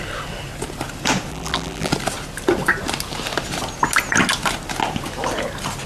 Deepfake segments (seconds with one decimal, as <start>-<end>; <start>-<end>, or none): 1.3-1.9